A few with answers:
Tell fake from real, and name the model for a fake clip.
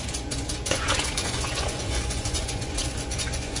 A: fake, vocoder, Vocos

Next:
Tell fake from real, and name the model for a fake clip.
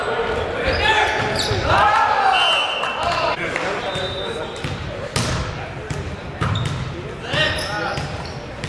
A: real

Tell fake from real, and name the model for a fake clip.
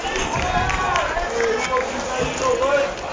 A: real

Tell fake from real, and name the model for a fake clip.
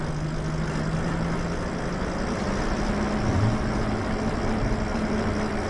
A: real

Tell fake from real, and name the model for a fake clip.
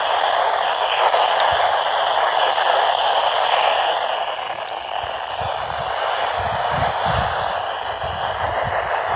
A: real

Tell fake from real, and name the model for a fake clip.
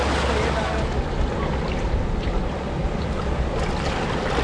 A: real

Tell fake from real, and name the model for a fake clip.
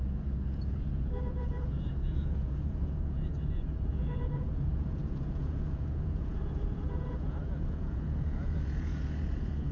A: fake, vocoder, Vocos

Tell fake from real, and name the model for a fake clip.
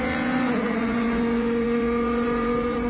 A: fake, vocoder, Vocos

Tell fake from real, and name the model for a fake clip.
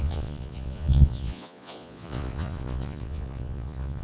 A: fake, vocoder, Vocos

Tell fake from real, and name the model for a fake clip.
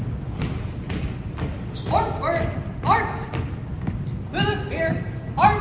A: real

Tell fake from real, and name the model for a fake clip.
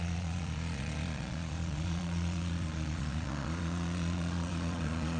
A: fake, vocoder, Vocos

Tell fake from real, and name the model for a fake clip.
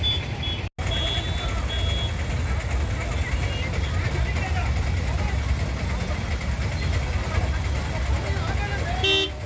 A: real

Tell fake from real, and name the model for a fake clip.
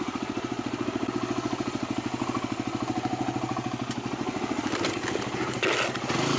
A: real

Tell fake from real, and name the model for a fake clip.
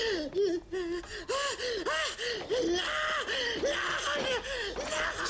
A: real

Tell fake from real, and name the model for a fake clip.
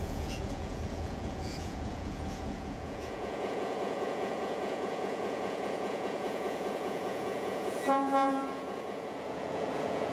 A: fake, vocoder, Vocos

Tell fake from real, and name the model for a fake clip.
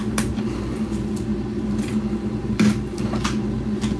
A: real